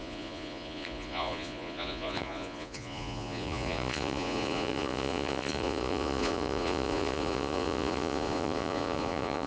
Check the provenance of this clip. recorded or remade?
remade